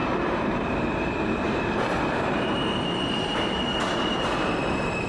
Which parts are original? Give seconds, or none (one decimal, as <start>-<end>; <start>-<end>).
none